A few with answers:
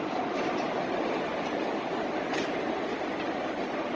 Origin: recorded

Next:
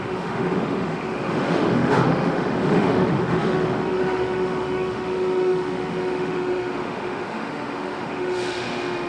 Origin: remade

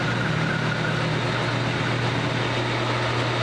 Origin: recorded